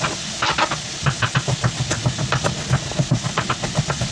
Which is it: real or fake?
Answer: real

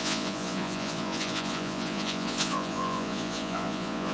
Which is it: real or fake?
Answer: fake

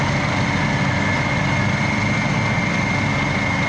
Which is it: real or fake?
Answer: real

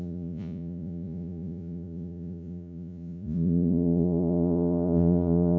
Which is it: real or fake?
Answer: fake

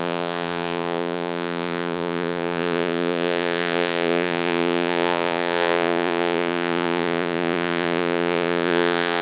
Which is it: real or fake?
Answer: fake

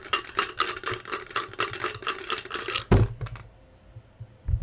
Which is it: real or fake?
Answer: real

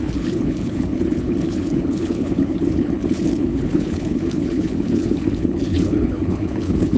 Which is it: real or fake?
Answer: fake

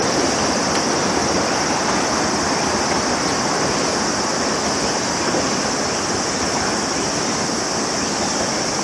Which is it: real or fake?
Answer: fake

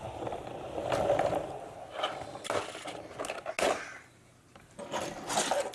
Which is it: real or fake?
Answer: real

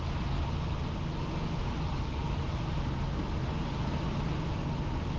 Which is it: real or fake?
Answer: real